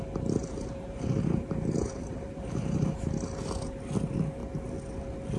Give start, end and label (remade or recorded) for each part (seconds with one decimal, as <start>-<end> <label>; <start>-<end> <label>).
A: 0.0-0.4 recorded; 0.4-2.9 remade; 2.9-5.4 recorded